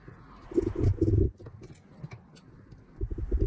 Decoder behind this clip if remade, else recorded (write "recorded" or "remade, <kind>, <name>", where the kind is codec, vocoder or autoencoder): recorded